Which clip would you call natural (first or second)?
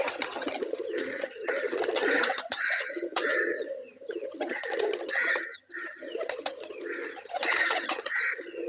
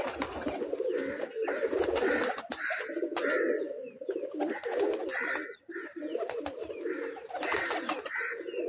second